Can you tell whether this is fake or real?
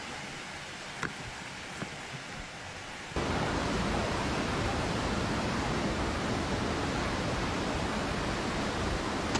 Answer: real